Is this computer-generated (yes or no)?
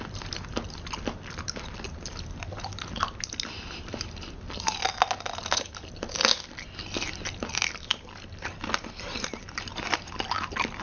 no